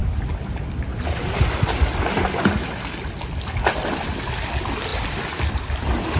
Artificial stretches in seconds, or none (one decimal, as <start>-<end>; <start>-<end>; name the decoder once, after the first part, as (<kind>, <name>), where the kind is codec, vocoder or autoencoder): none